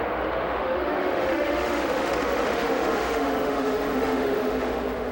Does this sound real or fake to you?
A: fake